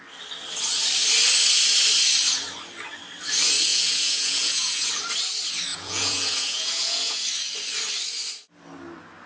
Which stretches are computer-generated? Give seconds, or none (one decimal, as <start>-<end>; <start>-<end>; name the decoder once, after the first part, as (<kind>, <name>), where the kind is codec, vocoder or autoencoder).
3.7-4.9 (vocoder, Vocos); 5.7-7.2